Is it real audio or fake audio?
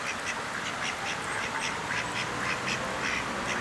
real